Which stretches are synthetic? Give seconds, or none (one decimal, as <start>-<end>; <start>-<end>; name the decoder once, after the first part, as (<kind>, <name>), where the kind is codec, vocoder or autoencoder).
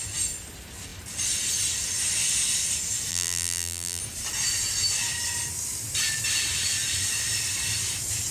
3.1-4.0 (vocoder, BigVGAN v2)